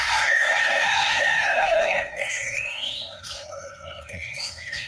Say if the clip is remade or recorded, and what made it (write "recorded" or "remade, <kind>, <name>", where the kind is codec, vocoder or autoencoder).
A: remade, codec, SNAC